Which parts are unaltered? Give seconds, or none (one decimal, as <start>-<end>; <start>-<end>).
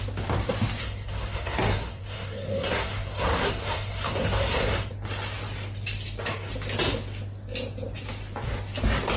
0.0-0.8; 4.9-9.2